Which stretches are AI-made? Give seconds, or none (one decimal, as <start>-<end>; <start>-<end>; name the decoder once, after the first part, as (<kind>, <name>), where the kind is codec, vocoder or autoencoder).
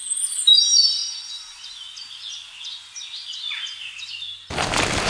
none